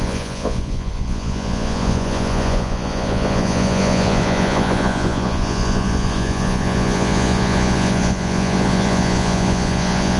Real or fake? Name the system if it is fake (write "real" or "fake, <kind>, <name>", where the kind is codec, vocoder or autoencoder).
fake, vocoder, Vocos